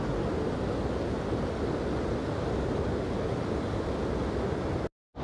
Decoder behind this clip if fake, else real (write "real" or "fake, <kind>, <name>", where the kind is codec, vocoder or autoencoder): real